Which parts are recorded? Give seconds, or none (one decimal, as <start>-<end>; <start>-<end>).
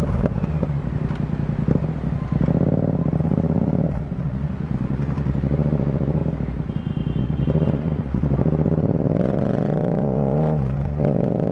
0.8-3.2; 6.2-7.2